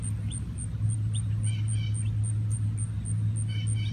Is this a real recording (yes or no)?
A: yes